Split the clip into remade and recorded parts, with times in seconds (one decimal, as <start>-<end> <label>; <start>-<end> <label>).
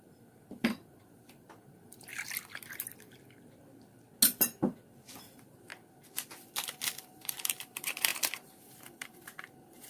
0.0-2.1 remade; 2.1-5.2 recorded; 5.2-5.7 remade; 5.7-7.0 recorded; 7.0-9.9 remade